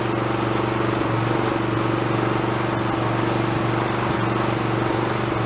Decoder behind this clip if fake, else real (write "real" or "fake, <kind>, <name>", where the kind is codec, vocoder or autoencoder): real